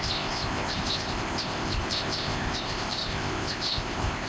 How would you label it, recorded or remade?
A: remade